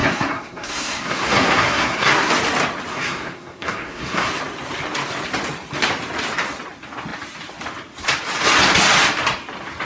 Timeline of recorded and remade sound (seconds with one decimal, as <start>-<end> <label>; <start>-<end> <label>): 0.0-2.3 remade; 2.3-2.9 recorded; 2.9-4.3 remade; 4.3-9.8 recorded